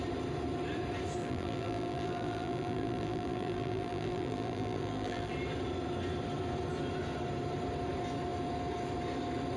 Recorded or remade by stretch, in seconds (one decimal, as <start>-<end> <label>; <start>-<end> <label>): 0.0-1.2 recorded; 1.2-5.3 remade; 5.3-9.6 recorded